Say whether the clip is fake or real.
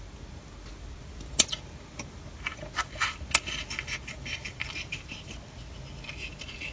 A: real